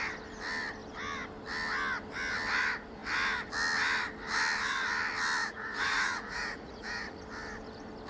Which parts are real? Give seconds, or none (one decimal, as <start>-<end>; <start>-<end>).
0.0-5.4; 7.2-8.1